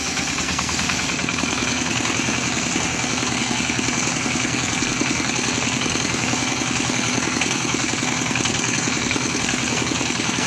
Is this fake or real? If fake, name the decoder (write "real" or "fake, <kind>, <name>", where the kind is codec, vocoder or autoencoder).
fake, codec, SNAC